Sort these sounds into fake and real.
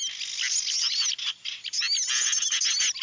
real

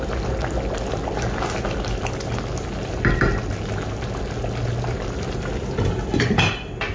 real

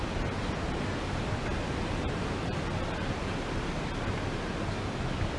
real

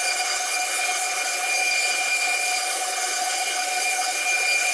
fake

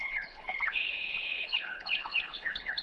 fake